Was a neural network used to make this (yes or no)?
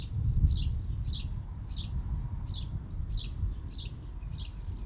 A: no